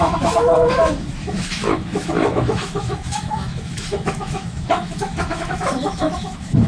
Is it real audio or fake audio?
fake